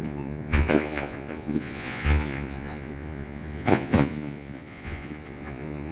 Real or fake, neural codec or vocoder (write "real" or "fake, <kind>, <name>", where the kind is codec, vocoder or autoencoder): fake, vocoder, Vocos